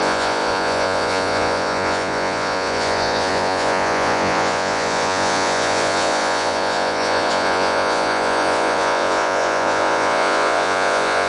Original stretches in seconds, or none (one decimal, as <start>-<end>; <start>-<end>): none